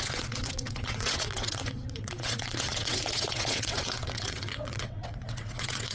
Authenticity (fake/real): fake